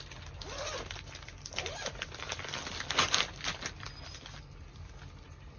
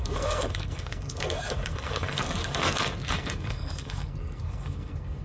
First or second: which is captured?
first